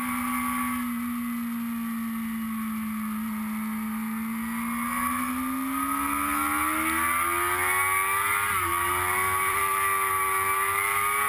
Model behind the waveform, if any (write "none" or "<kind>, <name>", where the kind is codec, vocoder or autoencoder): none